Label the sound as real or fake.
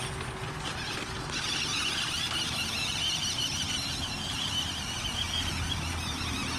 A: real